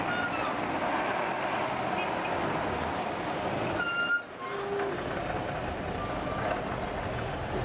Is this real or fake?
real